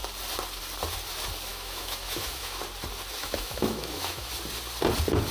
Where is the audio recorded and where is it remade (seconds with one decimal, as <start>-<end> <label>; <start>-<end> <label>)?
0.0-1.5 recorded; 1.5-2.6 remade; 2.6-3.2 recorded; 3.2-4.3 remade; 4.3-5.3 recorded